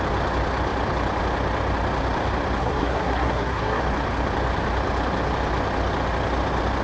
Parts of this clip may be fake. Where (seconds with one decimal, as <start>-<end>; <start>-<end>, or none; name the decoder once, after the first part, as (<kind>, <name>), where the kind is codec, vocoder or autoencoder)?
2.6-3.8 (codec, SNAC)